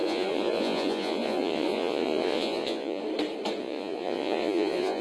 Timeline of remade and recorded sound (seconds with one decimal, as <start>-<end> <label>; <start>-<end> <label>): 0.0-3.0 remade; 3.0-3.6 recorded; 3.6-5.0 remade